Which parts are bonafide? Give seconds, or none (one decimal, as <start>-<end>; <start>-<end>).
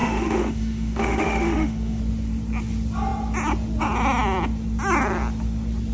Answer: 2.0-5.9